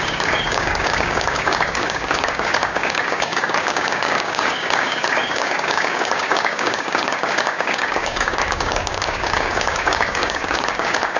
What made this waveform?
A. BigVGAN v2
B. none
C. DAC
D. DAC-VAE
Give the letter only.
C